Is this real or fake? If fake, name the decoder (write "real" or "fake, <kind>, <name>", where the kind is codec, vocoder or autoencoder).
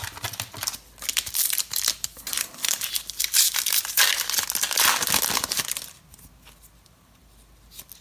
real